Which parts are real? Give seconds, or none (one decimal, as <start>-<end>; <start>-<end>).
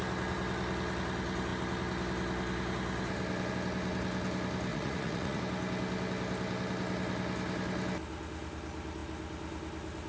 0.0-4.7; 5.4-10.1